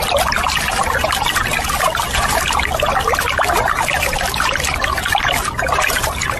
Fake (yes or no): no